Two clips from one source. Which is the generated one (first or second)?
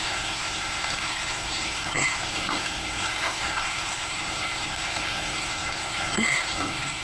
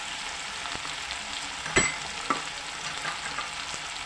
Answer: first